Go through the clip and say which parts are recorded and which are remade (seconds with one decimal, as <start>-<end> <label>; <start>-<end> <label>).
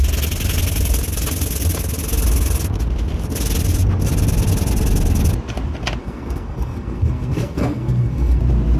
0.0-6.0 recorded; 6.0-8.4 remade; 8.4-8.8 recorded